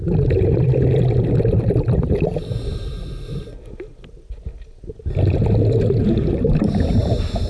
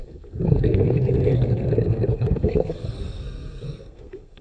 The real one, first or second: first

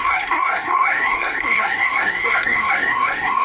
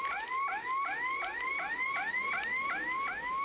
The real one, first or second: second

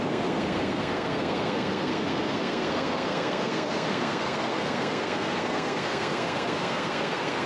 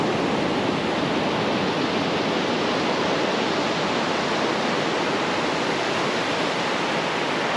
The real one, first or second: second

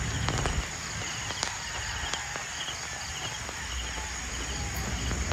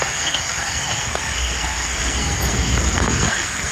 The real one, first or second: first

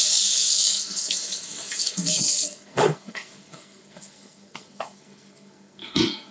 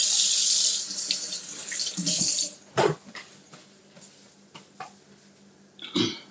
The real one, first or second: second